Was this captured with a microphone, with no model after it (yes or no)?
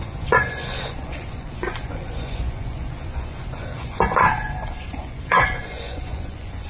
no